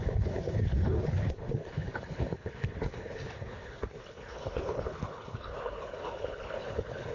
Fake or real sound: fake